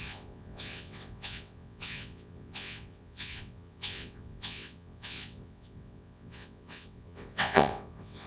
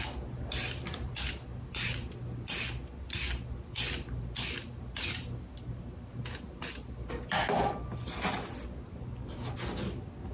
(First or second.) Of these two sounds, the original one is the second